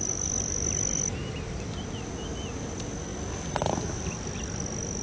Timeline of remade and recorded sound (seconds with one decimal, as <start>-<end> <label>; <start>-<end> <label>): 0.0-5.0 recorded